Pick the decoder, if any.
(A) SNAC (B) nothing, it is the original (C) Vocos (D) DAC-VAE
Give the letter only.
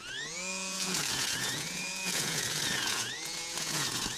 C